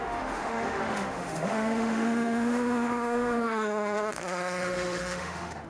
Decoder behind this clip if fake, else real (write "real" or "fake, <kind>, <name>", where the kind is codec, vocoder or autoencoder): fake, autoencoder, DAC-VAE